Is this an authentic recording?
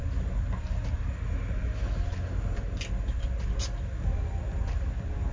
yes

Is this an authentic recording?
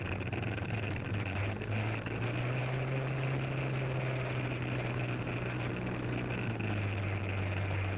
yes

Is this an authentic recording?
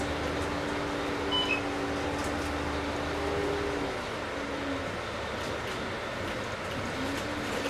yes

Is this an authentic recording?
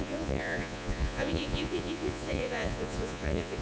no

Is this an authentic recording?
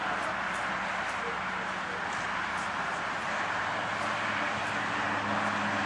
yes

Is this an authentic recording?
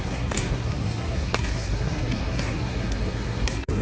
no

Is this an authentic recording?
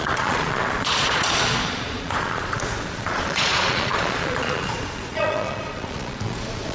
no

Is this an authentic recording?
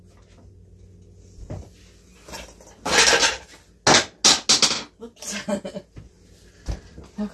yes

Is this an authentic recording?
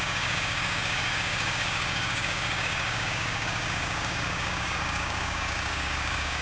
no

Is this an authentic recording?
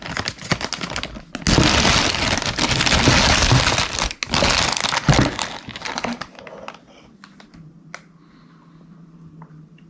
yes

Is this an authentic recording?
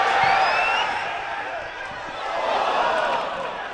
no